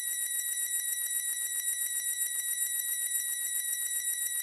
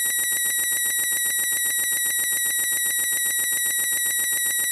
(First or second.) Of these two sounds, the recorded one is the second